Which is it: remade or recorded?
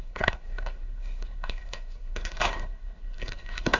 remade